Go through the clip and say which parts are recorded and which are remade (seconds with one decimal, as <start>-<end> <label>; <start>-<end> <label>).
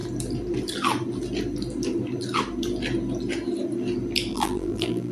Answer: 0.0-4.3 recorded; 4.3-5.1 remade